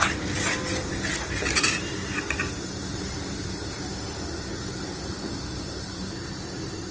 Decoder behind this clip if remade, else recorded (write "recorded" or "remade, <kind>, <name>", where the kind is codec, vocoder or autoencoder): recorded